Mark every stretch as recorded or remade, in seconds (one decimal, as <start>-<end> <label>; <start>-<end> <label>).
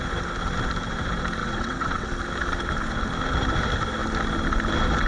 0.0-1.4 recorded; 1.4-2.1 remade; 2.1-5.1 recorded